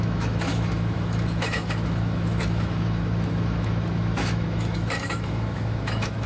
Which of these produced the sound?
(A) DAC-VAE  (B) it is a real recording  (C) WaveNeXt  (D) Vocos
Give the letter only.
A